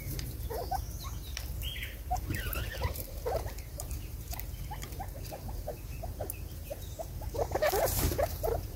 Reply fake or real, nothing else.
fake